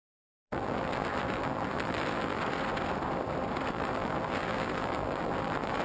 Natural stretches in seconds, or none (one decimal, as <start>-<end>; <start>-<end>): 2.4-3.7